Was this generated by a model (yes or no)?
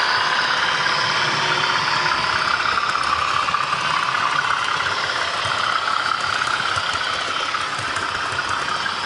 no